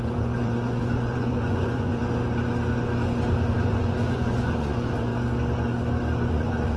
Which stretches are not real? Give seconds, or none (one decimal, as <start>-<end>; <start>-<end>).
0.0-2.0; 3.7-5.1; 6.3-6.8